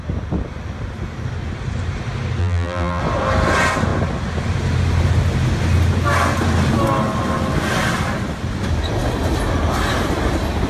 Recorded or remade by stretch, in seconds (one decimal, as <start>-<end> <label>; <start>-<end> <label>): 0.0-2.4 recorded; 2.4-3.0 remade; 3.0-10.7 recorded